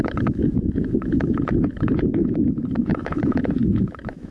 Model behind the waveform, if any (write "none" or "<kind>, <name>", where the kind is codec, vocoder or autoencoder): autoencoder, DAC-VAE